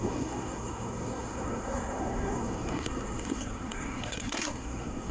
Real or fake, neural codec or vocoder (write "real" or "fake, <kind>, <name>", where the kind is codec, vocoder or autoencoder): fake, codec, SNAC